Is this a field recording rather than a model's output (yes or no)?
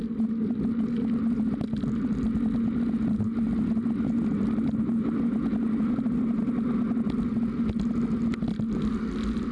yes